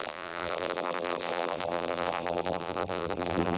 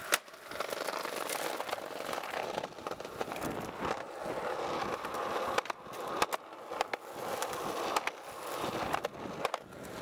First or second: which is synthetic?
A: first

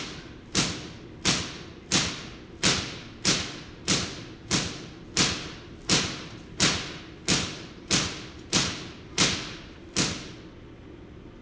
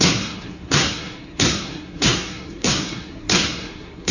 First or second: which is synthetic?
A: second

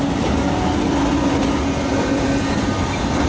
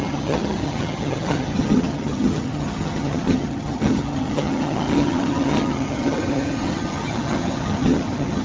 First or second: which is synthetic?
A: second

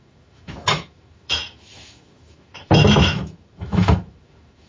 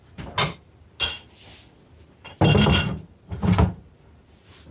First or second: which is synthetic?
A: first